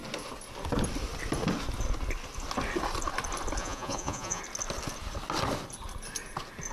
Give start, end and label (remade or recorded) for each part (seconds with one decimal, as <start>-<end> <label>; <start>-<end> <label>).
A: 0.0-3.6 recorded; 3.6-4.4 remade; 4.4-6.7 recorded